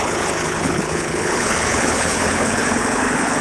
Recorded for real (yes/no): no